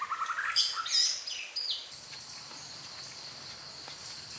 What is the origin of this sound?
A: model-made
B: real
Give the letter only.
B